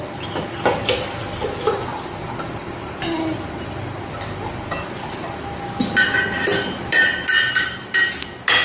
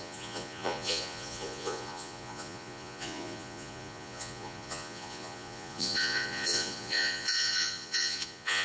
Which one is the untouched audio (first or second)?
first